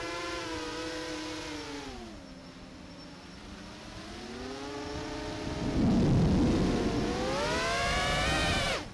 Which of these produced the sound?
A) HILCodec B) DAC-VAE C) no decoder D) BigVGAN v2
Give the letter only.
C